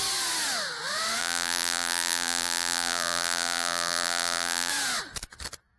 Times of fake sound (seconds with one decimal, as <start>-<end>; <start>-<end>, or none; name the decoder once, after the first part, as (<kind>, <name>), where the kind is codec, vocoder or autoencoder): 1.2-4.7 (vocoder, BigVGAN v2)